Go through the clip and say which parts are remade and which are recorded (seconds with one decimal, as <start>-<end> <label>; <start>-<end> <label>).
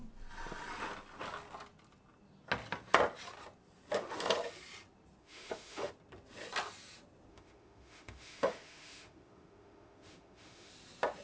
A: 0.0-5.2 recorded; 5.2-5.9 remade; 5.9-7.3 recorded; 7.3-10.7 remade; 10.7-11.2 recorded